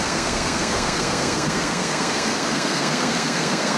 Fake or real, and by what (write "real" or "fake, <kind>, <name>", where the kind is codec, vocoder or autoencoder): fake, codec, SNAC